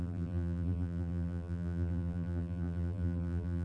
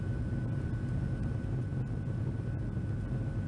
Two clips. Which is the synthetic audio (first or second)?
first